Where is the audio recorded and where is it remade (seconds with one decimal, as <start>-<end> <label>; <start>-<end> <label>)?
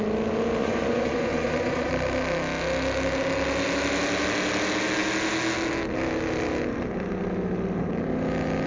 0.0-0.6 recorded; 0.6-1.9 remade; 1.9-8.7 recorded